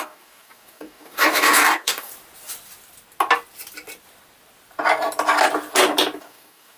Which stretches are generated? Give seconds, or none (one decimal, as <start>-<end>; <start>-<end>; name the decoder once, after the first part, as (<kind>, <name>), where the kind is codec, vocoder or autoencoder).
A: 0.0-2.1 (codec, DAC); 6.2-6.8